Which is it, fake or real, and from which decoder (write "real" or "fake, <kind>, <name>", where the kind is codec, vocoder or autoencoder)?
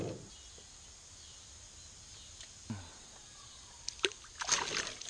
real